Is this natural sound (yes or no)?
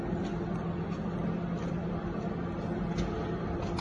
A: yes